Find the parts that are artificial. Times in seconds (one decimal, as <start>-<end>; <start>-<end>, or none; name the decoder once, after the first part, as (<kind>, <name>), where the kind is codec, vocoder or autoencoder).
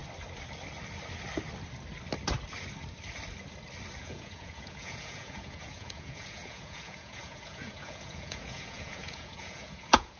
4.0-10.2 (vocoder, Vocos)